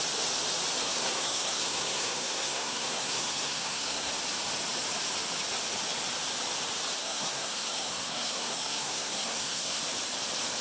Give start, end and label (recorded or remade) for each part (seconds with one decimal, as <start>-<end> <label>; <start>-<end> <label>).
0.0-0.8 recorded; 0.8-4.1 remade; 4.1-7.0 recorded; 7.0-9.8 remade; 9.8-10.6 recorded